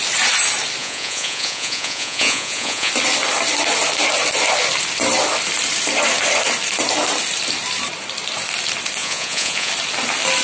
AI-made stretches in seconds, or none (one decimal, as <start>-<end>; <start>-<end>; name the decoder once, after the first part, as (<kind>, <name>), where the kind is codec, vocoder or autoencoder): 0.8-2.9 (vocoder, Vocos); 9.0-9.7